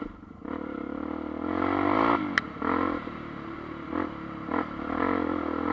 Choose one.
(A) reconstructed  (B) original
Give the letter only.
B